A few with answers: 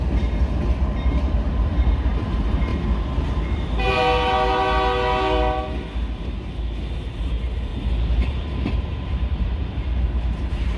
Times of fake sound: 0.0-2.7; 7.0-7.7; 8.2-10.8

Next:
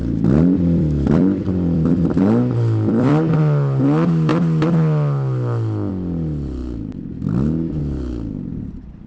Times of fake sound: 0.0-3.8

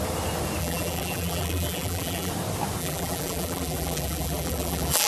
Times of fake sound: 0.6-2.3; 2.8-5.1

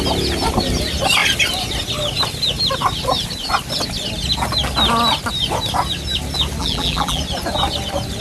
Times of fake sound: 6.6-7.2

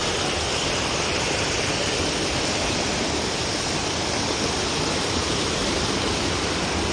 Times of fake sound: 5.2-5.8

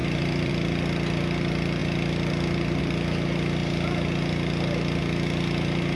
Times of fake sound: 0.0-0.5